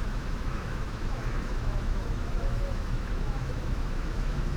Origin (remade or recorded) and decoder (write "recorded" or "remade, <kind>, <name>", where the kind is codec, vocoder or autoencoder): remade, autoencoder, DAC-VAE